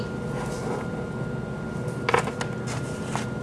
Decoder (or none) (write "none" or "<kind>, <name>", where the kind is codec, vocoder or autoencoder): none